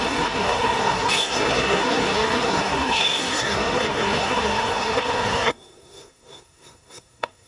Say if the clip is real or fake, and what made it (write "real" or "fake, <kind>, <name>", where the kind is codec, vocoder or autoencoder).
fake, codec, SNAC